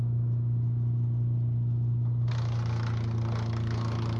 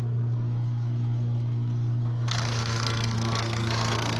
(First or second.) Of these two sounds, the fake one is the second